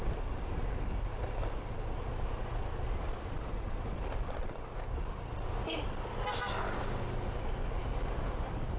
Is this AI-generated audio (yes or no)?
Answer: no